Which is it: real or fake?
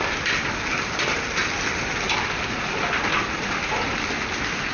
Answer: real